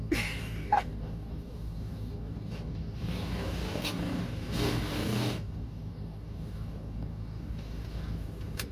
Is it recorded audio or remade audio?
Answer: remade